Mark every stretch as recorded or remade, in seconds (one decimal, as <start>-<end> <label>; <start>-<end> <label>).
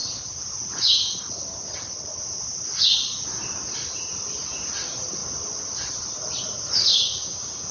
0.0-6.9 recorded; 6.9-7.7 remade